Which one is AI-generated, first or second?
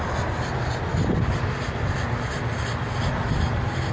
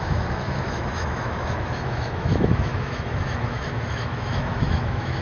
second